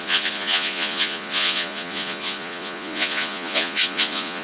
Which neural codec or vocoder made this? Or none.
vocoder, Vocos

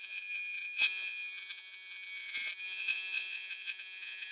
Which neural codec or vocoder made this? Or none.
vocoder, Vocos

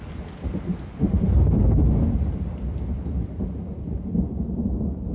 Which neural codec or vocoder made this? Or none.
none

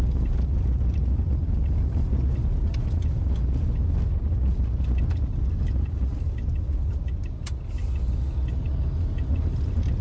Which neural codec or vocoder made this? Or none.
none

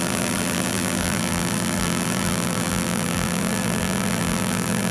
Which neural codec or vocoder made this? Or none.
vocoder, BigVGAN v2